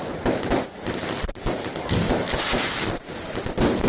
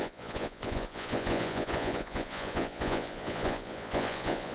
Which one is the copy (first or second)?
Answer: second